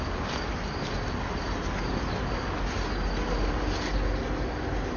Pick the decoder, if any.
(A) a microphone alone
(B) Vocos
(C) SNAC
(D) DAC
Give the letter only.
A